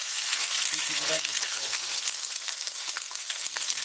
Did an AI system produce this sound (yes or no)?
yes